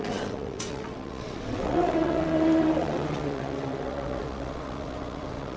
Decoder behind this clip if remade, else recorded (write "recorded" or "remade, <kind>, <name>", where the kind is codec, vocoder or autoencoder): remade, vocoder, WaveNeXt